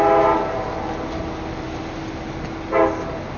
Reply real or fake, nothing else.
real